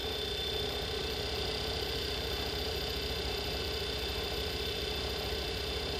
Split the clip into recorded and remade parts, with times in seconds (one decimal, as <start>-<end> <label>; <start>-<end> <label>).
0.0-6.0 remade